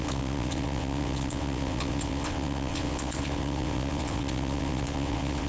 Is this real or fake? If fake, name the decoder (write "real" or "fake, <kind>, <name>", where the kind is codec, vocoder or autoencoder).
fake, vocoder, WaveNeXt